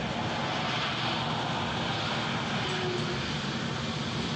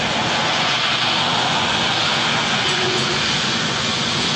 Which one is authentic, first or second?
first